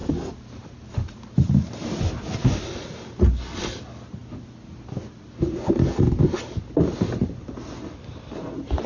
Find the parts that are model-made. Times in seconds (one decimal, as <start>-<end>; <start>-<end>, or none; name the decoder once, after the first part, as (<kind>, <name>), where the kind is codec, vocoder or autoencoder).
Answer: none